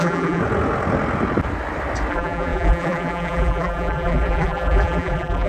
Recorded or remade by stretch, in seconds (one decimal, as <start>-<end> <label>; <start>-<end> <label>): 0.0-0.4 remade; 0.4-2.1 recorded; 2.1-5.5 remade